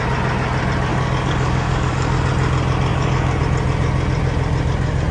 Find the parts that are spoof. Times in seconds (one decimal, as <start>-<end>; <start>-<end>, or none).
0.9-2.3; 2.9-3.4